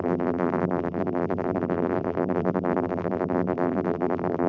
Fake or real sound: fake